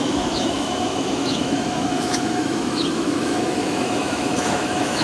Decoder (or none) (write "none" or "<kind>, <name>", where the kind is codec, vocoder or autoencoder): autoencoder, DAC-VAE